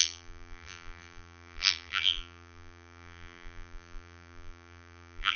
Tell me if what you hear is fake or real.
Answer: fake